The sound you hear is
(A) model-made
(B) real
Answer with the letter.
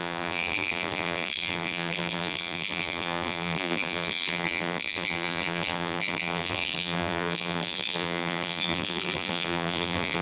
A